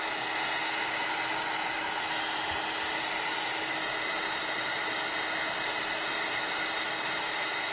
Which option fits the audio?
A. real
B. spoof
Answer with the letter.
A